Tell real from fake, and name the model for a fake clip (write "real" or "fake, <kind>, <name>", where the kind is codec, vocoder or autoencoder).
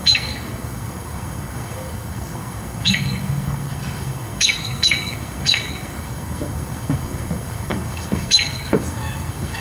fake, codec, SNAC